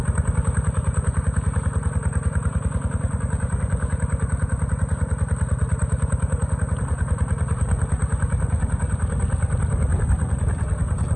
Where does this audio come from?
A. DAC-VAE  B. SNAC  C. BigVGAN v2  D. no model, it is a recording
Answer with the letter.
D